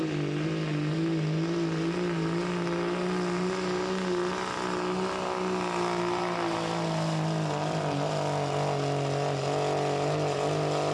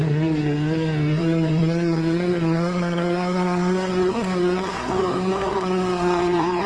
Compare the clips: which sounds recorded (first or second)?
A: first